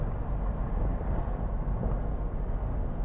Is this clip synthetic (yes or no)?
no